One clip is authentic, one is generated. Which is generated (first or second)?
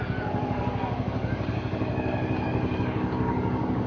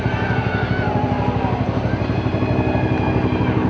first